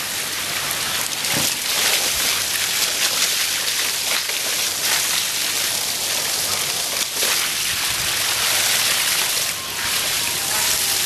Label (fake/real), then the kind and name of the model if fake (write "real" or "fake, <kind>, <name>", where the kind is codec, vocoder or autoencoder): real